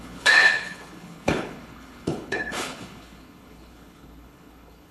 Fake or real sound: fake